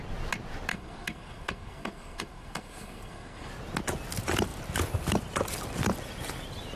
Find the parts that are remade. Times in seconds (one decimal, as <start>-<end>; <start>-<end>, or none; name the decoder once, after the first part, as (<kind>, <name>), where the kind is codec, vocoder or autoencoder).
0.7-3.5 (codec, SNAC)

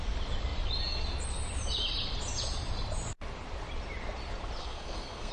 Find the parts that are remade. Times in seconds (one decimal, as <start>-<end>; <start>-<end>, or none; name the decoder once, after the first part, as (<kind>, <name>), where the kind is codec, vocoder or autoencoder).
4.6-5.3 (codec, SNAC)

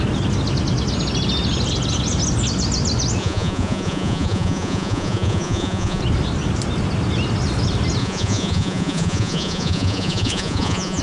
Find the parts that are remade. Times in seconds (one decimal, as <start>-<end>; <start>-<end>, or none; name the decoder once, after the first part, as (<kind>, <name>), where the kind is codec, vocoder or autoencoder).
3.2-6.0 (vocoder, Vocos); 8.0-11.0